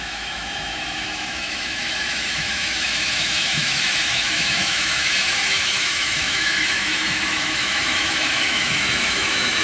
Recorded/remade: remade